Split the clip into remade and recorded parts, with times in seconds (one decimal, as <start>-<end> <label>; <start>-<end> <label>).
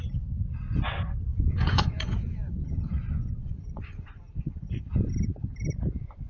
0.0-1.3 recorded; 1.3-5.1 remade; 5.1-6.3 recorded